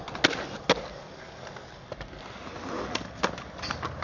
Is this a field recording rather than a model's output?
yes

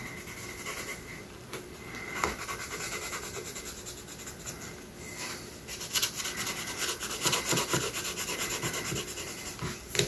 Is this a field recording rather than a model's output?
yes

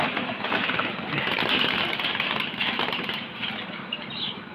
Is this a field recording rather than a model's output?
no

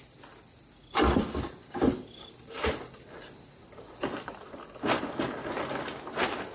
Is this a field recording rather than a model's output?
yes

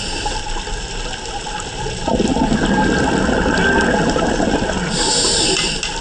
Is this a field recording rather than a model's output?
yes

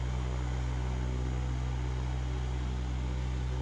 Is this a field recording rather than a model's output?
yes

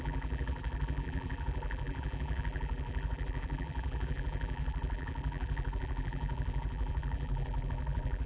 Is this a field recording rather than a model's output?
no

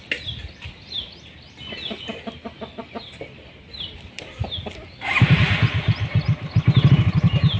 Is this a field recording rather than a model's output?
yes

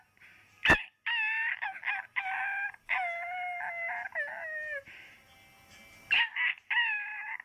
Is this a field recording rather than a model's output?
yes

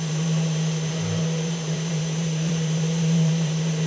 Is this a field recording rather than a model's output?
no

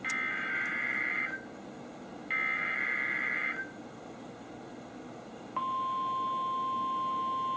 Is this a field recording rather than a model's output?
yes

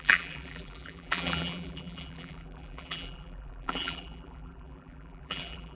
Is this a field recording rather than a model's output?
no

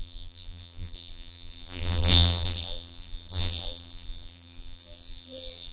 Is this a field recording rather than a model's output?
no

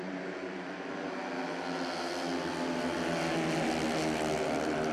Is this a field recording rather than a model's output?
yes